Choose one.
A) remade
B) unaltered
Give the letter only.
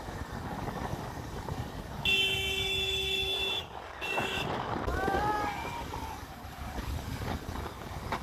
A